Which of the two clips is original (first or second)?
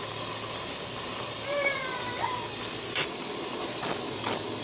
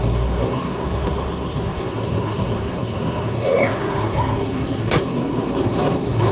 first